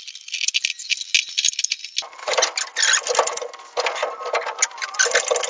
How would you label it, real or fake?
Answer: real